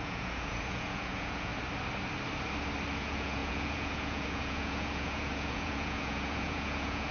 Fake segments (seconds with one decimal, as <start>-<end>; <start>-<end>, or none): 0.0-1.5; 3.0-7.1